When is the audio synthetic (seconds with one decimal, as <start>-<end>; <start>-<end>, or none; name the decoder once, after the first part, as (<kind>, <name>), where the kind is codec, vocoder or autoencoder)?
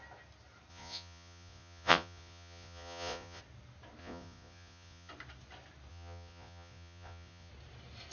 0.7-3.4 (vocoder, Vocos); 4.0-5.1; 5.9-7.5